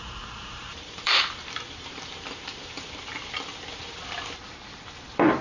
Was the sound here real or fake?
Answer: fake